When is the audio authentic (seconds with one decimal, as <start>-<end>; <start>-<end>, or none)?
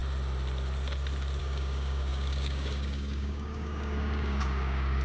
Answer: 0.0-1.4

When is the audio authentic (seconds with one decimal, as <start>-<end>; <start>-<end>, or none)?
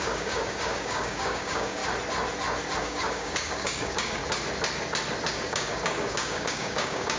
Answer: 1.8-2.8; 4.2-5.3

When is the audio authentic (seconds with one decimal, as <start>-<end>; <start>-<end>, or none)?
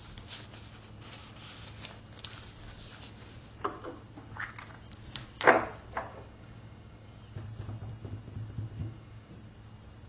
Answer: 0.0-6.1; 7.2-8.8; 9.3-10.1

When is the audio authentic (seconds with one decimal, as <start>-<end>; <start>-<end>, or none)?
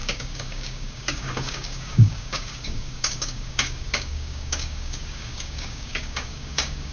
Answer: none